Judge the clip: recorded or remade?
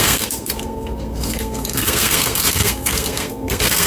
remade